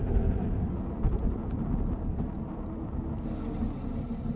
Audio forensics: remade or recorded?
recorded